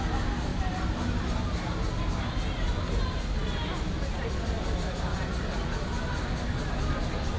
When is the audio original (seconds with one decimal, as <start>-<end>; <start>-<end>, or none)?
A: 0.0-0.5; 2.7-7.4